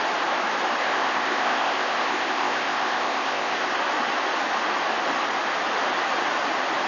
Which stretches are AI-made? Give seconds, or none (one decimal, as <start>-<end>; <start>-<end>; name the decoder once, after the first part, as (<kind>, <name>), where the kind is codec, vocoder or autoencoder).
0.8-3.7 (codec, ZipCodec)